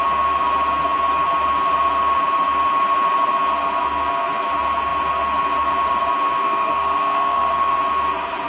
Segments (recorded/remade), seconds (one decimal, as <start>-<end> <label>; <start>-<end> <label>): 0.0-6.4 recorded; 6.4-7.7 remade; 7.7-8.5 recorded